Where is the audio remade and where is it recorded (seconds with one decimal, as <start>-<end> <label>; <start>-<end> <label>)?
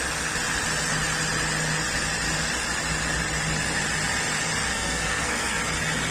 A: 0.0-4.7 recorded; 4.7-5.6 remade; 5.6-6.1 recorded